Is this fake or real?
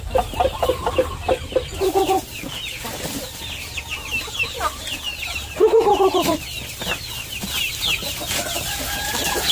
real